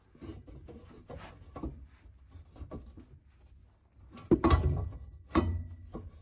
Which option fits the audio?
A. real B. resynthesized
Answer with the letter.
A